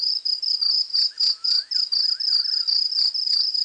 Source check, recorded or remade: recorded